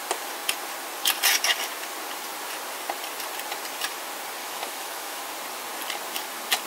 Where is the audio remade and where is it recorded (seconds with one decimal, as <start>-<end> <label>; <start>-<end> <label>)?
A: 0.0-4.4 recorded; 4.4-5.2 remade; 5.2-6.7 recorded